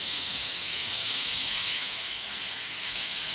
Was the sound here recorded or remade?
remade